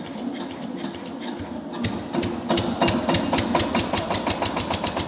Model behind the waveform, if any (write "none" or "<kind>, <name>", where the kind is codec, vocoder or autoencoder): none